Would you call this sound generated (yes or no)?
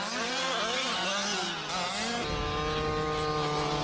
no